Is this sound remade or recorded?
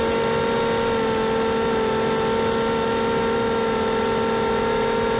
recorded